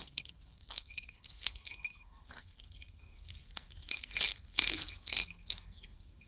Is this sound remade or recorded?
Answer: remade